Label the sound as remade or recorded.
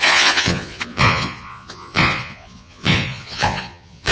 remade